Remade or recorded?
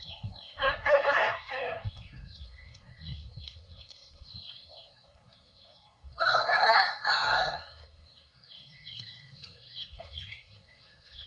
remade